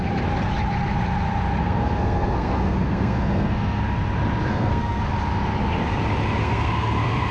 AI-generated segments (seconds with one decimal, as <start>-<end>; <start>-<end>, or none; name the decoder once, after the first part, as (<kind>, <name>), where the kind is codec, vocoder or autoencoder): 1.6-3.8 (codec, SNAC); 4.5-5.0; 6.4-7.3